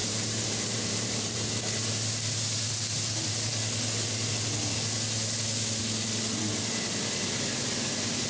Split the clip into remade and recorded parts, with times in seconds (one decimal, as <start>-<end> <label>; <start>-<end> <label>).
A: 0.0-1.6 remade; 1.6-8.3 recorded

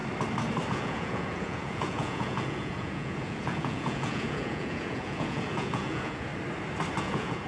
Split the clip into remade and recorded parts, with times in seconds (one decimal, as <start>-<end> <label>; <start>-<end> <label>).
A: 0.0-0.7 recorded; 0.7-6.3 remade; 6.3-7.0 recorded; 7.0-7.5 remade

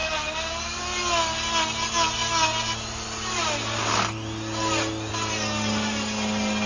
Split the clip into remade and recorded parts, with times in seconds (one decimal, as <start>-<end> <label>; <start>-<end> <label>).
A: 0.0-6.7 recorded

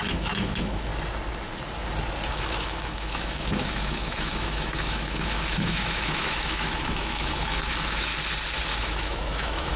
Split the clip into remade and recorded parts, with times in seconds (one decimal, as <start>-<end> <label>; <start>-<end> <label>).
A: 0.0-0.9 remade; 0.9-2.3 recorded; 2.3-8.1 remade; 8.1-8.7 recorded; 8.7-9.8 remade

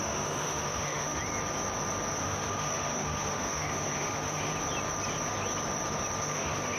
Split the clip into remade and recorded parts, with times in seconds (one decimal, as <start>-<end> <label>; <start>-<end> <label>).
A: 0.0-1.2 remade; 1.2-2.2 recorded; 2.2-4.5 remade; 4.5-6.2 recorded; 6.2-6.8 remade

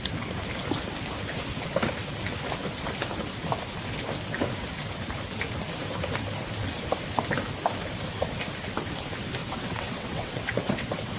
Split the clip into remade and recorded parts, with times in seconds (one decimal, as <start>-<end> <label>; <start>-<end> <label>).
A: 0.0-9.4 recorded; 9.4-11.2 remade

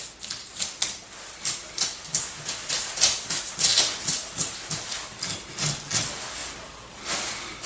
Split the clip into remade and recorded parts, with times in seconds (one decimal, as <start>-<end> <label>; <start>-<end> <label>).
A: 0.0-0.5 recorded; 0.5-4.4 remade; 4.4-7.7 recorded